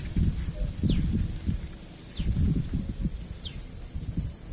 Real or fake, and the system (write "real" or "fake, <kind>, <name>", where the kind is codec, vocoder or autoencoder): real